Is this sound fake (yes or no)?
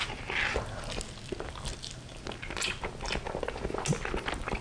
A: no